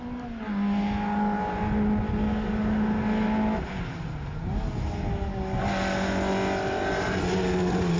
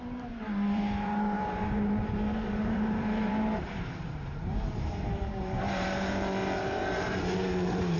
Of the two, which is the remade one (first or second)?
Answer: second